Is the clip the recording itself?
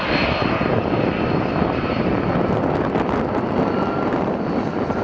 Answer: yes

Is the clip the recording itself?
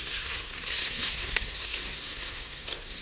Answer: no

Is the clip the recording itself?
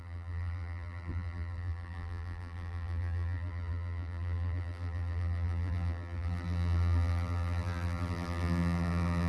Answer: no